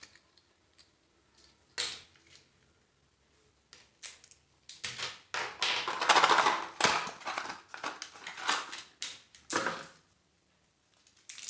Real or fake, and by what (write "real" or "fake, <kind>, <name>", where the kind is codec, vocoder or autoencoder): real